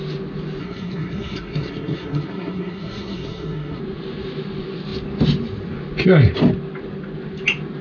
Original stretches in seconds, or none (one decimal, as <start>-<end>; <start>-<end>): 0.0-0.6; 3.8-7.8